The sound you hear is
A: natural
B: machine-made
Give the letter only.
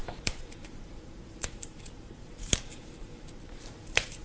B